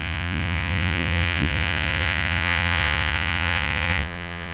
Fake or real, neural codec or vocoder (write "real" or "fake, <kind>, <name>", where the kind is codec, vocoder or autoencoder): fake, vocoder, Vocos